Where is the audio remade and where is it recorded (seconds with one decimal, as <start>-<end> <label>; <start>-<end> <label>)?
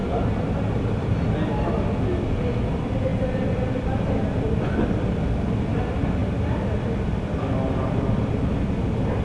0.0-9.2 recorded